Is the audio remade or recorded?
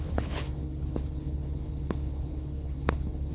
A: remade